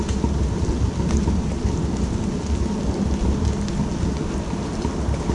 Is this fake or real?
real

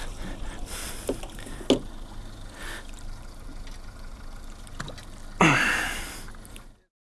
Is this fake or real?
real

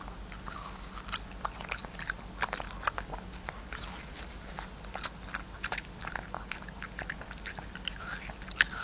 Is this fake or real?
real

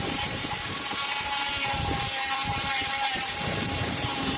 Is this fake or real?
fake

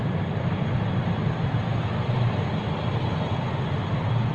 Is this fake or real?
real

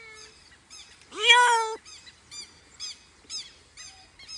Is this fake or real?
real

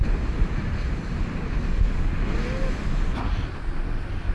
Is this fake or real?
real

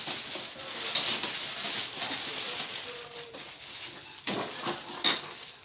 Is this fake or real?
real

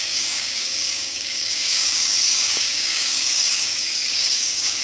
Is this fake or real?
fake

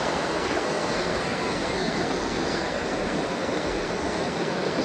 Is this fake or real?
fake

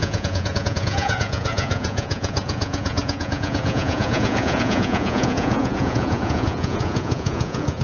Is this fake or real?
fake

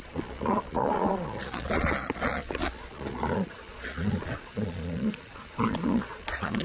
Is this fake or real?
fake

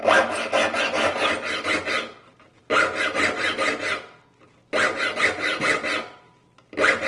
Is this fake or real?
real